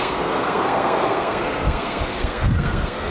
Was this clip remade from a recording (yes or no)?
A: yes